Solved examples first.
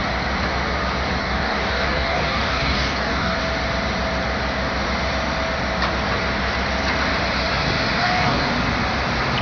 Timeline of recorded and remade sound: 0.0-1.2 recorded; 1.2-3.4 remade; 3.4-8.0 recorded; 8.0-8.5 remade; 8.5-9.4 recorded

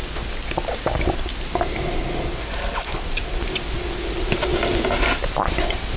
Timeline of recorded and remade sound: 0.0-6.0 recorded